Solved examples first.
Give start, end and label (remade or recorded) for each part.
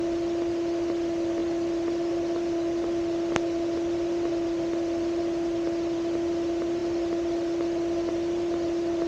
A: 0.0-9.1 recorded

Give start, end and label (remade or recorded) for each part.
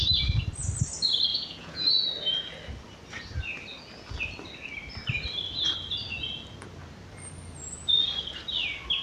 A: 0.0-1.3 recorded; 1.3-1.9 remade; 1.9-9.0 recorded